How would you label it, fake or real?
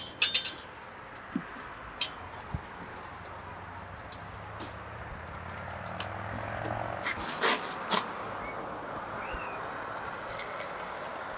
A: real